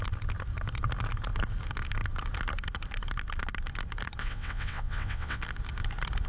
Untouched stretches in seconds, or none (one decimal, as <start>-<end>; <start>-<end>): 0.0-4.2; 5.4-6.3